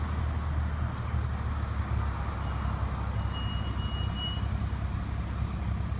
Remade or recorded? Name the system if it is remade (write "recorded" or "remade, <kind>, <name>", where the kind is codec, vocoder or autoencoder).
recorded